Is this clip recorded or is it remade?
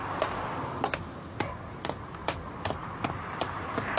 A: recorded